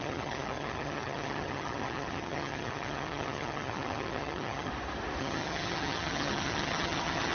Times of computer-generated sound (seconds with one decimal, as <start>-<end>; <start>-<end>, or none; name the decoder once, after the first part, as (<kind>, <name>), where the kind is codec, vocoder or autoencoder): 0.0-4.7 (vocoder, HiFi-GAN); 5.2-7.3